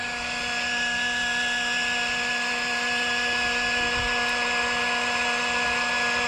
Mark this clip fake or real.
real